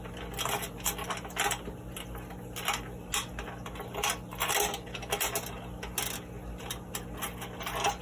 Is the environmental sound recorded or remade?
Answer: recorded